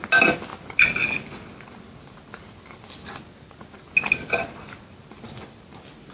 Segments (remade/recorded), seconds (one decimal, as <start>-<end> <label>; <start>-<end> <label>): 0.0-6.1 recorded